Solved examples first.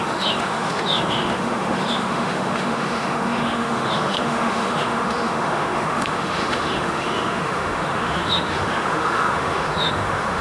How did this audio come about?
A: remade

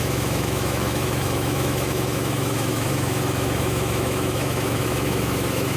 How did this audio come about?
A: remade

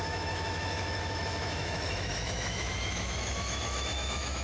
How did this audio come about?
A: remade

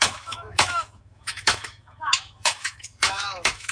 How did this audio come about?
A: remade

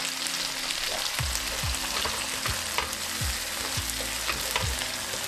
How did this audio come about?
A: recorded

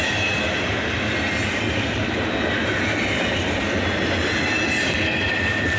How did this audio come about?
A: recorded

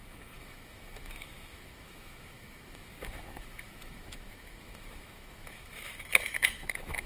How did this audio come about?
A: remade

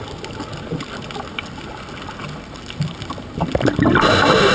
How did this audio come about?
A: recorded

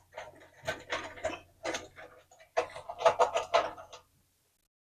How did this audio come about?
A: recorded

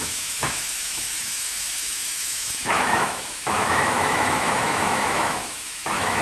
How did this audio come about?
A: remade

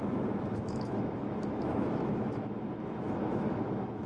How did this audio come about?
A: remade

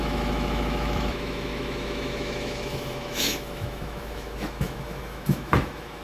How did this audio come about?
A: remade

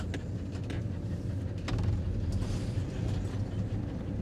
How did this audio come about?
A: recorded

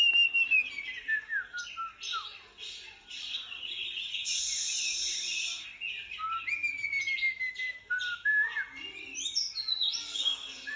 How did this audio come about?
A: recorded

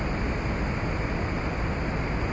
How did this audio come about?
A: recorded